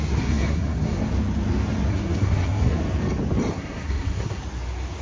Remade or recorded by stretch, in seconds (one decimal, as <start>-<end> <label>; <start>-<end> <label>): 0.0-1.0 remade; 1.0-1.9 recorded; 1.9-2.8 remade; 2.8-3.5 recorded; 3.5-4.4 remade; 4.4-5.0 recorded